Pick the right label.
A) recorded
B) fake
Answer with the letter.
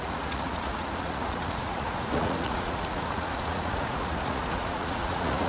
B